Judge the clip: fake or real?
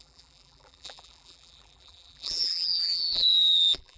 fake